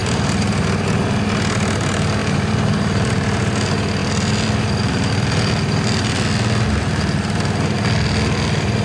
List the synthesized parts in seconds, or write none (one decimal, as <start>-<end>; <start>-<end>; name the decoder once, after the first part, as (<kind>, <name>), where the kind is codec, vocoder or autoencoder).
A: 2.2-3.4 (vocoder, BigVGAN v2); 4.0-5.1

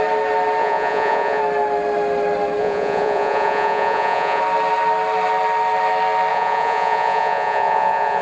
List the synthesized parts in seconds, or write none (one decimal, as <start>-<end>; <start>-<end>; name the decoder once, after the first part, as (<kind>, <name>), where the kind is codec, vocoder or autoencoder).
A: 0.6-1.4 (vocoder, Vocos); 2.6-4.4; 6.3-8.2